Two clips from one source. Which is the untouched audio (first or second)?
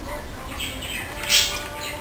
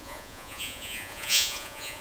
first